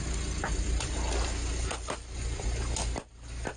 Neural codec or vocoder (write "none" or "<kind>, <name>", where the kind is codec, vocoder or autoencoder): none